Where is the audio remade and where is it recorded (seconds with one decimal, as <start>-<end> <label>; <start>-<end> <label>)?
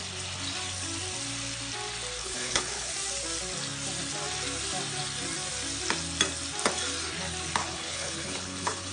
0.0-2.2 recorded; 2.2-2.9 remade; 2.9-7.6 recorded; 7.6-8.9 remade